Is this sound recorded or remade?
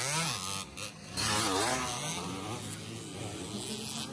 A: recorded